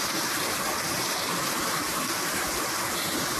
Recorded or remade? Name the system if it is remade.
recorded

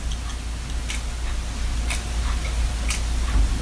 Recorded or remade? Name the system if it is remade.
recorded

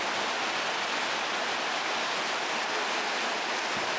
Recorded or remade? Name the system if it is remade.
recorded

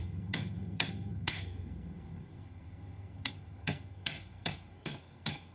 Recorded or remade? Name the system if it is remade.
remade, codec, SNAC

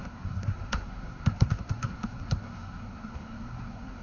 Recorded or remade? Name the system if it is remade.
remade, codec, SNAC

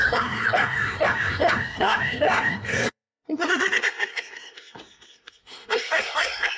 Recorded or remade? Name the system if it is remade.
remade, codec, SNAC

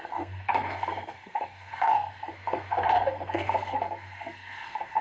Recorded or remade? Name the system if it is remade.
remade, codec, SNAC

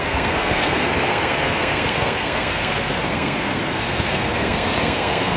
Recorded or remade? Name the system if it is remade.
remade, codec, SNAC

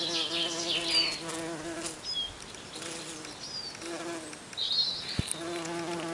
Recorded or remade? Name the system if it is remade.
recorded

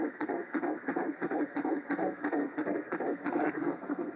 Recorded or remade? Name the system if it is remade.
remade, codec, SNAC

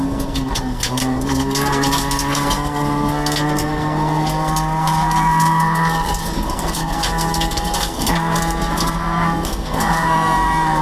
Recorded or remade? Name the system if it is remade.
remade, codec, SNAC